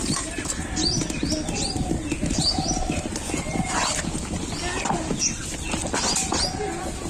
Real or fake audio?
real